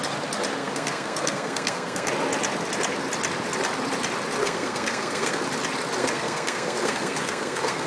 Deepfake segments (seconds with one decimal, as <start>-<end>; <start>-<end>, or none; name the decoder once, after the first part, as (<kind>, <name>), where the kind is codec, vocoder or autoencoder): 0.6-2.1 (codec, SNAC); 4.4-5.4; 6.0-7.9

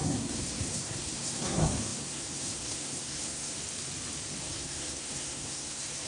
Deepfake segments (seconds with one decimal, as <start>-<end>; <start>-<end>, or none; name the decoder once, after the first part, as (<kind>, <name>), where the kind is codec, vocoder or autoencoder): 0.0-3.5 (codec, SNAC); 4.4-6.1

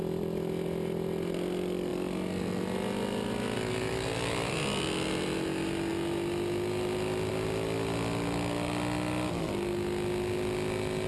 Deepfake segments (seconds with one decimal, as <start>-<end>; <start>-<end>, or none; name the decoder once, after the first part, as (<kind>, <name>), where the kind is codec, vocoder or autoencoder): none

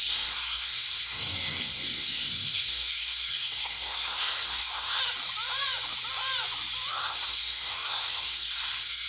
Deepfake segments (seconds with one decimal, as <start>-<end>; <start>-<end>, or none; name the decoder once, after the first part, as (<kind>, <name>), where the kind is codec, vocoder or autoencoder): 0.0-5.0 (codec, SNAC); 6.9-9.1

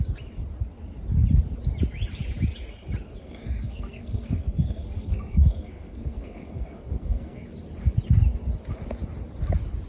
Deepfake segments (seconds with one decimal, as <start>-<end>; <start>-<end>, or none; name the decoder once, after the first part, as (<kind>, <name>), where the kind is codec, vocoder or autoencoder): 3.2-7.4 (codec, SNAC)

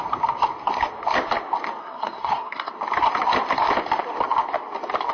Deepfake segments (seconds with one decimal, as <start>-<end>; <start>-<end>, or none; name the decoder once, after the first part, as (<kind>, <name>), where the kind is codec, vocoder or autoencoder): 1.8-2.7 (codec, SNAC)

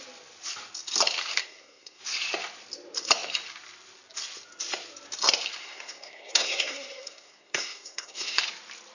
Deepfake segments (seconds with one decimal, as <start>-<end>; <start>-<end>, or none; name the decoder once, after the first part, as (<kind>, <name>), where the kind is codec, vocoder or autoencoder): 1.4-2.0 (codec, SNAC); 5.6-8.4

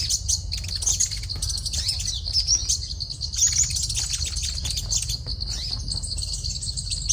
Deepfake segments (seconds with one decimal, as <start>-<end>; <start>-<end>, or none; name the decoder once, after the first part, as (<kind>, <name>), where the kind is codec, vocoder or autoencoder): none